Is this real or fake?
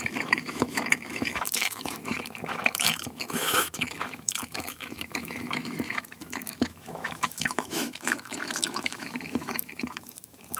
fake